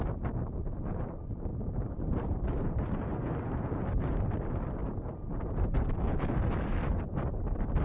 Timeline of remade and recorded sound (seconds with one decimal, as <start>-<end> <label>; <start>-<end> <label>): 0.0-1.5 recorded; 1.5-4.3 remade; 4.3-4.8 recorded; 4.8-6.0 remade; 6.0-7.8 recorded